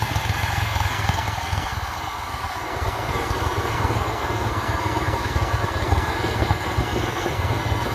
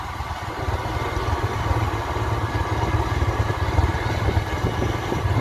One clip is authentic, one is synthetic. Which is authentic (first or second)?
second